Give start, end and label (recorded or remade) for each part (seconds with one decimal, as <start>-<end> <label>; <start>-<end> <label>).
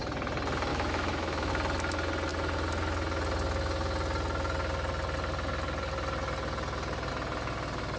0.0-0.7 recorded; 0.7-1.5 remade; 1.5-8.0 recorded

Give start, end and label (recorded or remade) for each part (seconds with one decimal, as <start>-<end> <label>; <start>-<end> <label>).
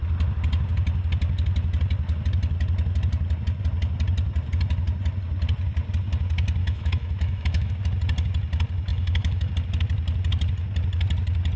0.0-6.6 recorded; 6.6-7.7 remade; 7.7-8.9 recorded; 8.9-9.5 remade; 9.5-11.6 recorded